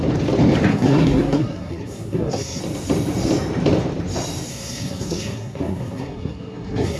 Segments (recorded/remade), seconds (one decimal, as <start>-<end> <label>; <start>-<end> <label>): 0.0-0.7 recorded; 0.7-2.6 remade; 2.6-4.5 recorded; 4.5-7.0 remade